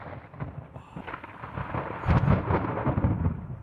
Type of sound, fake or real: real